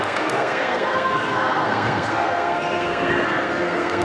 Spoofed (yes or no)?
yes